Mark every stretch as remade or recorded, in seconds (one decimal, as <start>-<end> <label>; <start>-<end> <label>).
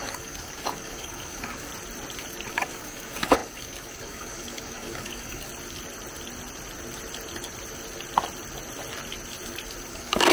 0.0-1.7 remade; 1.7-2.5 recorded; 2.5-5.5 remade; 5.5-9.9 recorded; 9.9-10.3 remade